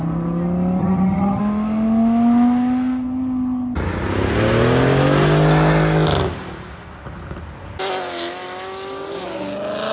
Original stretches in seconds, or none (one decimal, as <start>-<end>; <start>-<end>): 0.0-0.8; 1.4-9.9

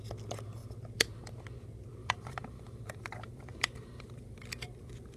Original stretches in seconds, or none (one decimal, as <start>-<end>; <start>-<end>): 0.0-2.0

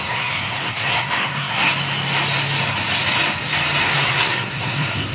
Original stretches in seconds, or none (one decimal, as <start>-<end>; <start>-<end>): 1.7-3.9

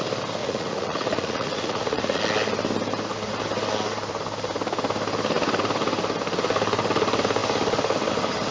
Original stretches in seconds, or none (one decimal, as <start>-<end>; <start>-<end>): 0.0-0.4; 2.2-8.5